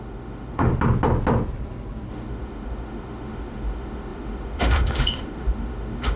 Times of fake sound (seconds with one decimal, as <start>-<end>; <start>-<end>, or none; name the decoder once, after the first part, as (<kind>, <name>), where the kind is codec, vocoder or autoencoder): 0.0-0.7 (autoencoder, DAC-VAE); 2.1-6.2